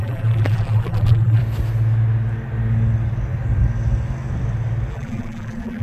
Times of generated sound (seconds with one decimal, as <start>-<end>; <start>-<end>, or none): 0.0-1.4; 4.9-5.8